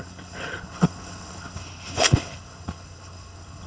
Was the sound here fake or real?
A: fake